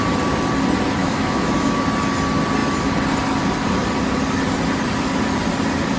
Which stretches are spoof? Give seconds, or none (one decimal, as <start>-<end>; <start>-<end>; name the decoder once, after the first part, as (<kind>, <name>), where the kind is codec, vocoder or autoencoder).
1.0-1.8 (autoencoder, DAC-VAE)